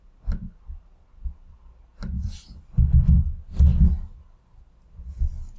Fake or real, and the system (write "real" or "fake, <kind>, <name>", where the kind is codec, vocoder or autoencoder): real